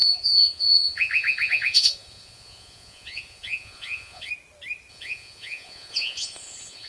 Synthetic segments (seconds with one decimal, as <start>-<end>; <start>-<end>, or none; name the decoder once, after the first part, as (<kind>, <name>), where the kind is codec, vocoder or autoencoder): 0.0-4.3 (vocoder, Vocos); 4.9-6.9